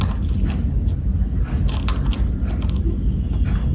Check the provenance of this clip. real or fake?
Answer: real